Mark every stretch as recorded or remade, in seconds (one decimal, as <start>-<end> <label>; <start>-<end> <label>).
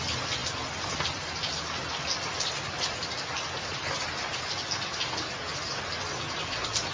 0.0-6.9 recorded